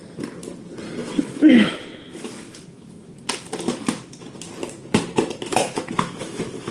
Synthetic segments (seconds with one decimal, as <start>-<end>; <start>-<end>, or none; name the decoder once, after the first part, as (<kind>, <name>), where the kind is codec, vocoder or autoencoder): 1.0-3.2 (autoencoder, DAC-VAE); 5.5-6.7